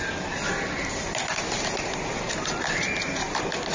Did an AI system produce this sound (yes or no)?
no